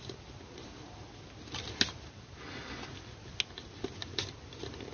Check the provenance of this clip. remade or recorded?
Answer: recorded